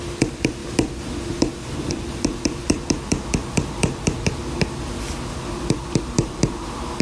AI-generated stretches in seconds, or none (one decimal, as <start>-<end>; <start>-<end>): none